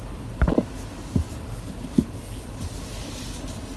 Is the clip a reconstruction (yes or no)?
no